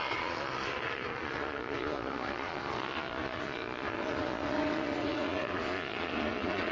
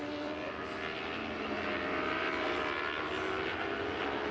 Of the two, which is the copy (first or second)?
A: first